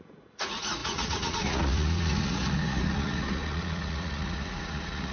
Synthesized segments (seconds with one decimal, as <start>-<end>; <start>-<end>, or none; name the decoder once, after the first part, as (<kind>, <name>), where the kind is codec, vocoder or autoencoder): 0.0-5.1 (vocoder, Vocos)